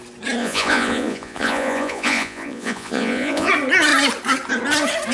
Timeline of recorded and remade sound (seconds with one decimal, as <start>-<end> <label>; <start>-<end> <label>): 0.0-0.4 recorded; 0.4-3.5 remade; 3.5-5.1 recorded